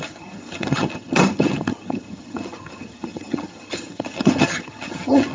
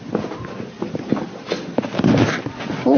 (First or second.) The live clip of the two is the second